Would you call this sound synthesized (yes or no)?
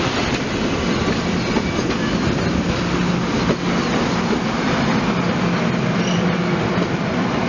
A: no